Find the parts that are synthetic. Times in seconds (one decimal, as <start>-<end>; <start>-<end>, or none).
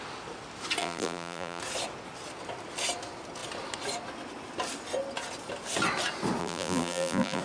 0.8-1.6; 6.4-7.4